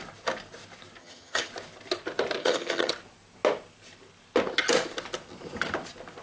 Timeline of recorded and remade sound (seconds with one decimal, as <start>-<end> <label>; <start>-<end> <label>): 0.0-1.0 recorded; 1.0-1.5 remade; 1.5-2.4 recorded; 2.4-2.9 remade; 2.9-6.2 recorded